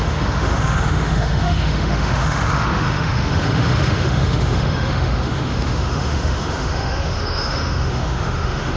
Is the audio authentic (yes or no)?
no